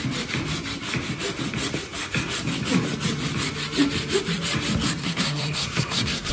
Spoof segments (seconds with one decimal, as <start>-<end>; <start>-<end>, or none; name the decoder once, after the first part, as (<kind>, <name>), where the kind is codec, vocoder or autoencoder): 5.0-6.3 (codec, SNAC)